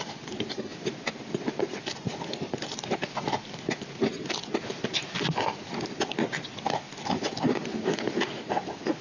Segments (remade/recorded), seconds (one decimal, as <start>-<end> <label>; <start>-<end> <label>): 0.0-9.0 recorded